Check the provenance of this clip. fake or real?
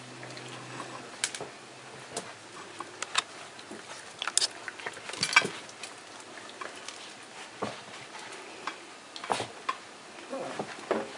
real